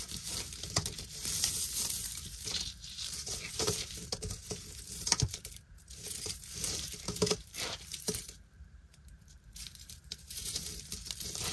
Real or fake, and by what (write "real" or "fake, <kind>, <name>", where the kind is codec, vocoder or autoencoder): fake, vocoder, BigVGAN v2